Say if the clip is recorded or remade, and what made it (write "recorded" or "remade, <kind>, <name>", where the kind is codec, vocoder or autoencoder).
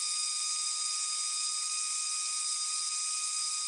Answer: recorded